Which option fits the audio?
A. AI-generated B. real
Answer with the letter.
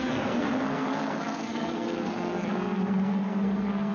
A